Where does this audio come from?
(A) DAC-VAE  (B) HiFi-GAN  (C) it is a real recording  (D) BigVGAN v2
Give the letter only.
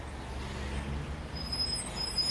C